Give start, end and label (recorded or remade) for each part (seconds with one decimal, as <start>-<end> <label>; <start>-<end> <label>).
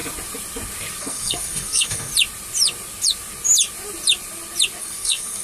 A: 0.0-1.0 recorded; 1.0-2.1 remade; 2.1-4.8 recorded; 4.8-5.4 remade